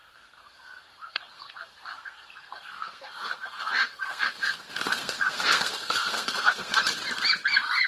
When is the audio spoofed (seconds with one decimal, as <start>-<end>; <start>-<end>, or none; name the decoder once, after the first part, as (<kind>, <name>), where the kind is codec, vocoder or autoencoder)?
0.0-6.7 (codec, SNAC)